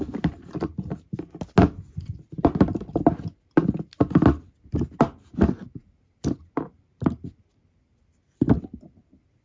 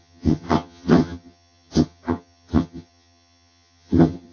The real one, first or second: first